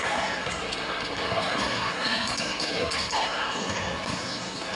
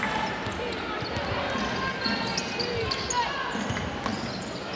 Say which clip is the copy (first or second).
first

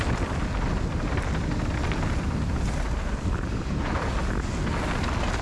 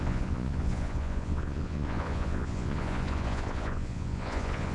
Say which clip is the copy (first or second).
second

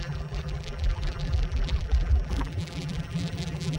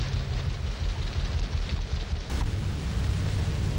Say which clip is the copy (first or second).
first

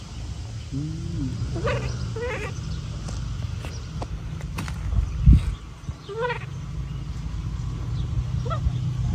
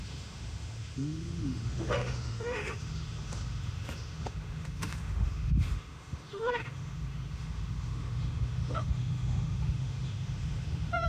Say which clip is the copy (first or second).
second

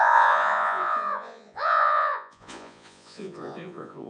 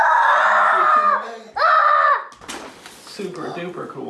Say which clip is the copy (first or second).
first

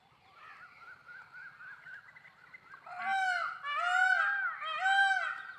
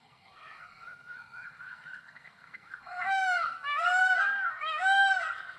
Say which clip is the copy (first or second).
second